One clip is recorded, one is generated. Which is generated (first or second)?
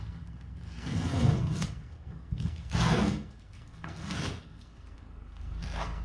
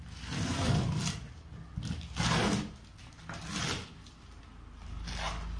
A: first